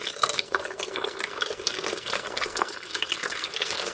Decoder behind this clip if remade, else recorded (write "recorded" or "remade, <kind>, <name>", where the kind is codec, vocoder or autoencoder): remade, codec, SNAC